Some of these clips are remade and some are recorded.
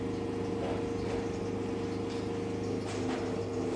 recorded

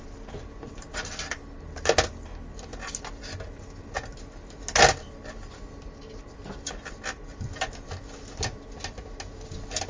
recorded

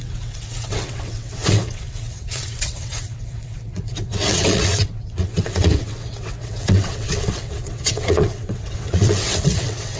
remade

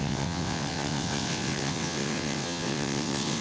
remade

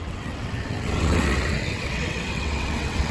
remade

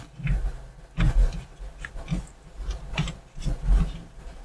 recorded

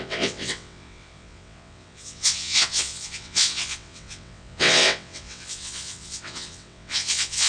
remade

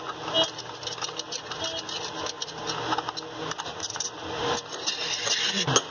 recorded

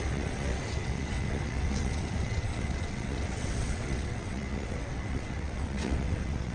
remade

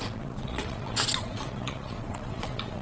remade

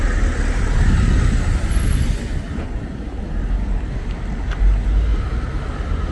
recorded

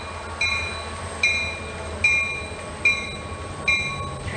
recorded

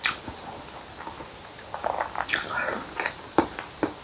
recorded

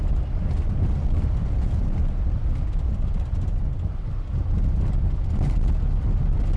recorded